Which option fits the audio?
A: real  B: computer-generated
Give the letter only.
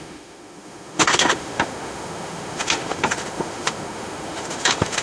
B